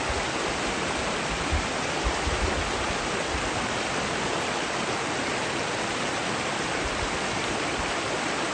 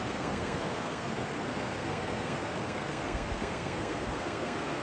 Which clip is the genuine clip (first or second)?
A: first